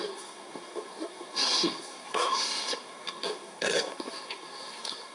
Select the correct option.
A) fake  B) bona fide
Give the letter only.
A